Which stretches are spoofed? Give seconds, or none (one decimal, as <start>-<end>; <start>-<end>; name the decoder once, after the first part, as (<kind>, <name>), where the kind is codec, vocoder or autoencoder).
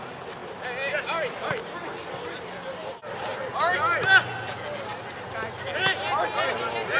none